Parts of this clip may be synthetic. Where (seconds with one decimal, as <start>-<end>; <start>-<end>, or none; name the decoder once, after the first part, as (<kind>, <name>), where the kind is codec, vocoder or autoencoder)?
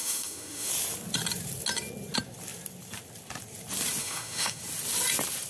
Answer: 0.0-0.7 (autoencoder, DAC-VAE); 4.0-4.6